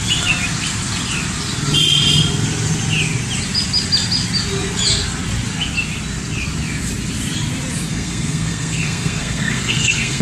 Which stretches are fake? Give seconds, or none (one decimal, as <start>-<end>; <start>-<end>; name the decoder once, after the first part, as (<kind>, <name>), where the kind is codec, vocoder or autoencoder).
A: 7.9-10.2 (codec, SNAC)